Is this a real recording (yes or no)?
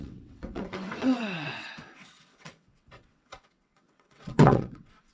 no